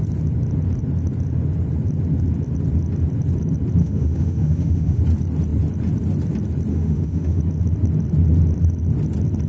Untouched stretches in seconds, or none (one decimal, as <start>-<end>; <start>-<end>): 0.0-3.8; 5.0-6.7; 7.4-9.5